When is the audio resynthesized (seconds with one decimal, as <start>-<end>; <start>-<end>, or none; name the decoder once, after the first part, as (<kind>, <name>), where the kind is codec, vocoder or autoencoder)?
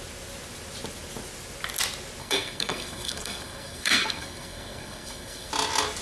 2.2-5.5 (codec, SNAC)